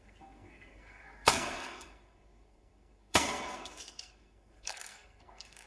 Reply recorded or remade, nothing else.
remade